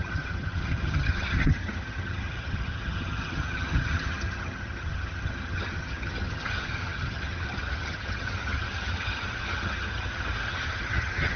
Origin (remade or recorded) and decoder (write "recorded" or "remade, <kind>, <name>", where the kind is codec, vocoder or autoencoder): remade, vocoder, HiFi-GAN